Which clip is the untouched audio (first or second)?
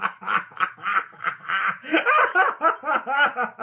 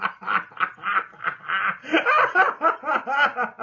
second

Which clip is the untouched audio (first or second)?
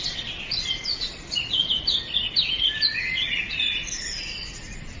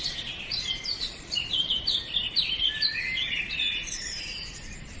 first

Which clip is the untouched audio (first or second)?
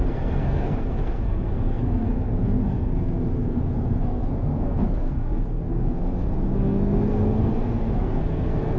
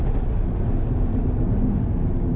second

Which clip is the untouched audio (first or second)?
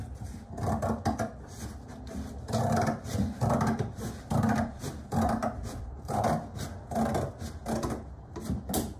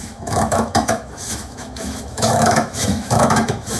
first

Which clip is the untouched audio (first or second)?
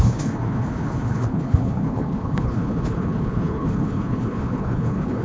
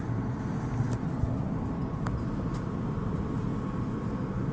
second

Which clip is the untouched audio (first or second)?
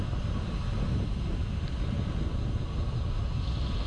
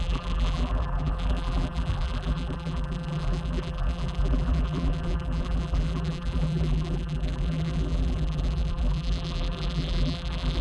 first